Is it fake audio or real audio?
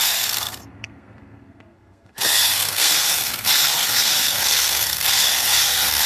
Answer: fake